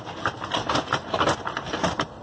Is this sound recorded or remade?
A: recorded